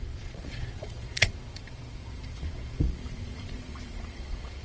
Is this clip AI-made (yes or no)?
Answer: yes